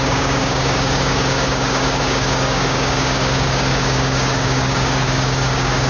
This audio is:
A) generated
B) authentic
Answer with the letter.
A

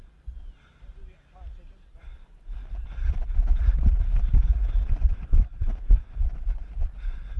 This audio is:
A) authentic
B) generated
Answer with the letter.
A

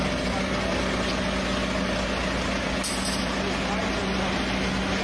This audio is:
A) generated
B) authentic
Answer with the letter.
B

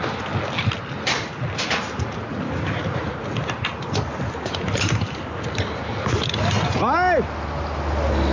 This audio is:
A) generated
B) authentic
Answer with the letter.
B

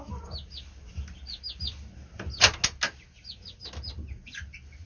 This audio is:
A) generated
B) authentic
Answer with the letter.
B